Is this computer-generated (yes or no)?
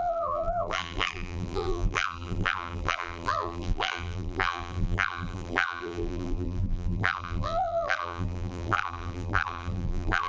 yes